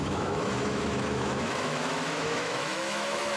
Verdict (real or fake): fake